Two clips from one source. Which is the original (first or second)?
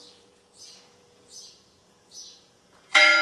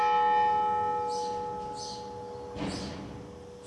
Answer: second